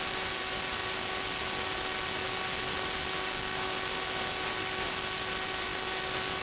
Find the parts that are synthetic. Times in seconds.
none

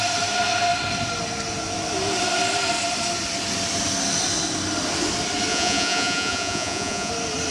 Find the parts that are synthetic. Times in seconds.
5.5-7.1 (vocoder, Vocos)

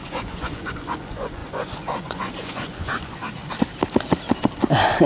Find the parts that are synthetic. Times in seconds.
0.0-3.2 (vocoder, Vocos)

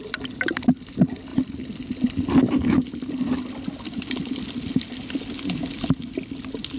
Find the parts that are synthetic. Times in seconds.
none

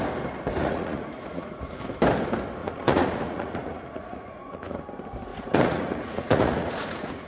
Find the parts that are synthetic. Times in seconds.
0.6-1.8 (vocoder, Vocos); 2.6-4.8; 5.3-7.3

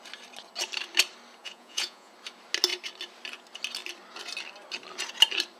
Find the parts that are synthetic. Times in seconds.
1.4-2.1 (vocoder, Vocos)

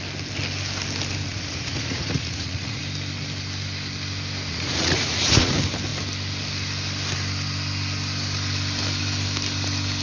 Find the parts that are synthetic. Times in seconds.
1.3-2.8 (vocoder, Vocos); 4.5-5.5